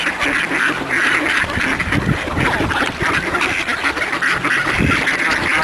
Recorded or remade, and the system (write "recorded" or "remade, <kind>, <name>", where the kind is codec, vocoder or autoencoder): remade, vocoder, BigVGAN v2